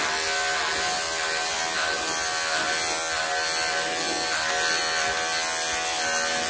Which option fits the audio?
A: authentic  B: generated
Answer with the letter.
A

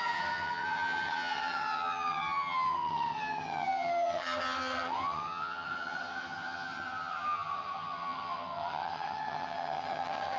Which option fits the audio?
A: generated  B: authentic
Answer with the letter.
A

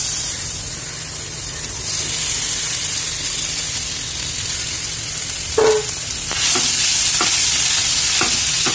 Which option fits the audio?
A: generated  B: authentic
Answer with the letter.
B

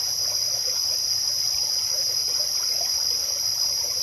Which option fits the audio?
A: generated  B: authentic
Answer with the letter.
B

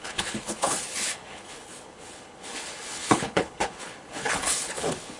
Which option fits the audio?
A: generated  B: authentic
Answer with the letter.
A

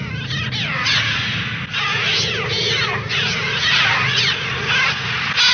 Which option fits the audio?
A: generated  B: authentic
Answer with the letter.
B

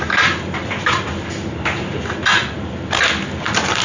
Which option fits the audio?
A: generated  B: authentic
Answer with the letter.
B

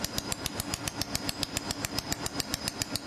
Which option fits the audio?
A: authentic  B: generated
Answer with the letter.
A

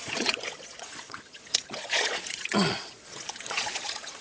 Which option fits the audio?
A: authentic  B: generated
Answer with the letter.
B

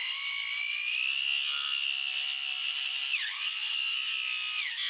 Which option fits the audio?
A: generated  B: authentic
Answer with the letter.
B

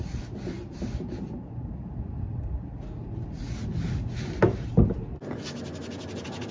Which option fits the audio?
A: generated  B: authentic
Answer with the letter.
B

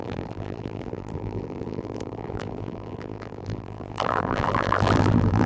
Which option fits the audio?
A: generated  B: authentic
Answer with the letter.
A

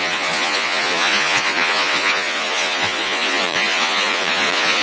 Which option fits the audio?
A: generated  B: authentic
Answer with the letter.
A